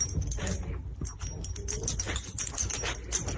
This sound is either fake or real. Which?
real